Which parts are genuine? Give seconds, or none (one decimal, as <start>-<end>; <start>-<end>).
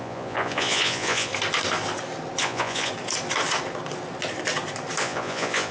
1.3-2.4; 2.9-5.0